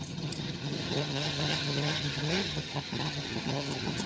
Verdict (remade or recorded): remade